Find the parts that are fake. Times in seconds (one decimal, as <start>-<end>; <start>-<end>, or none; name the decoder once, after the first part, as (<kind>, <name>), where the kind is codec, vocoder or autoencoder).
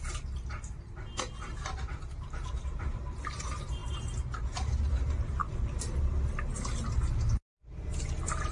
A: none